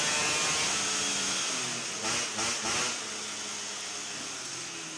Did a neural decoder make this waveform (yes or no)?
no